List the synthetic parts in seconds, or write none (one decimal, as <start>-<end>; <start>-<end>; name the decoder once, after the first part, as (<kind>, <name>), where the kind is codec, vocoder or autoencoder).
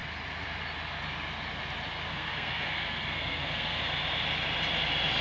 2.1-3.8 (codec, SNAC)